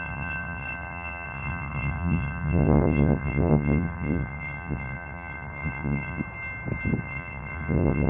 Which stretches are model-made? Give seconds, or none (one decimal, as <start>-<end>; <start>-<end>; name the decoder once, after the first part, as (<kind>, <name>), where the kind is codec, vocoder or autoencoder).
0.0-6.2 (vocoder, WaveNeXt); 7.0-8.1